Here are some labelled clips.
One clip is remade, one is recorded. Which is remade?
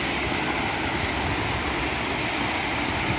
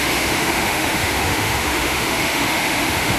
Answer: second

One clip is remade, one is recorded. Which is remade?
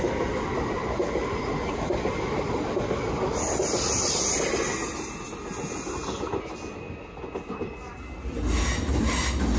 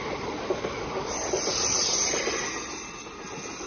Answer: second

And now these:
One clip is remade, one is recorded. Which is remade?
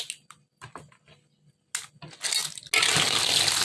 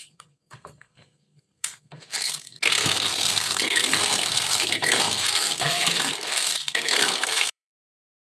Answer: second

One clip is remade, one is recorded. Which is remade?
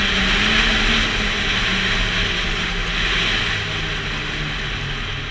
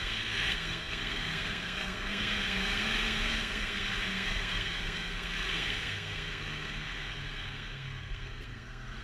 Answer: second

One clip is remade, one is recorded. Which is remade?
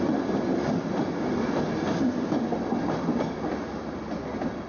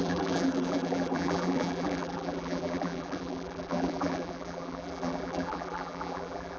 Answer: second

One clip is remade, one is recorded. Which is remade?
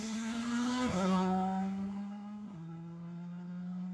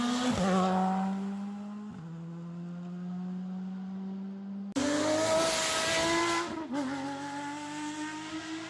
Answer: first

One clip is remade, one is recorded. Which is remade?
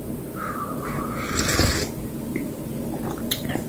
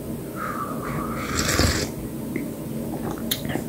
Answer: first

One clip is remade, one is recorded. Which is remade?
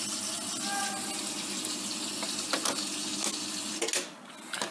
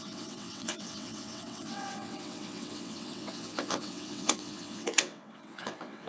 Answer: second